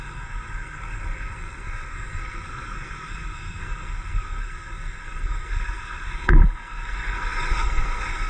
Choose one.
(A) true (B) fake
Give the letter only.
B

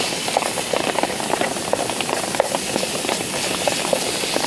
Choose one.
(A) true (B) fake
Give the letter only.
A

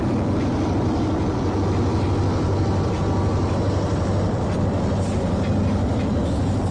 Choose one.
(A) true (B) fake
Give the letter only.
A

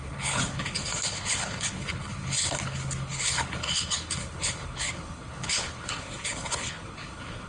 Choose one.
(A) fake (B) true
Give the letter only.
A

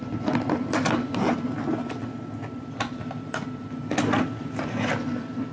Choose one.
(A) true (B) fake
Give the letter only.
A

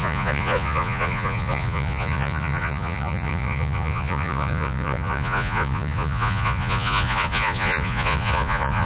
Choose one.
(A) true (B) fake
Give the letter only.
B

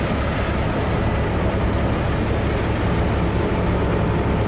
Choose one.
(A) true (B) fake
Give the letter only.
A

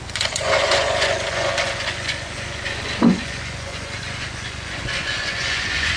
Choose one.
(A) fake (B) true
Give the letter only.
A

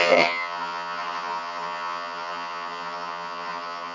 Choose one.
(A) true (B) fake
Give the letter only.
B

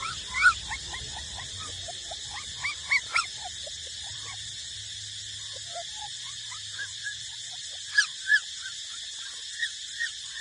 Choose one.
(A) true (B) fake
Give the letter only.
A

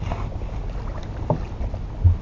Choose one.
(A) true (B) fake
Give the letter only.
A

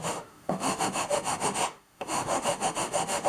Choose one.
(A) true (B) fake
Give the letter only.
B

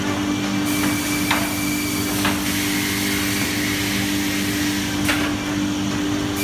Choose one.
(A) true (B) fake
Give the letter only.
A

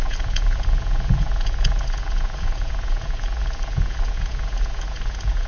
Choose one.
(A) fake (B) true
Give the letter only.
A